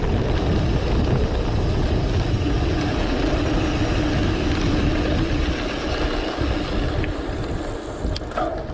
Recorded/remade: recorded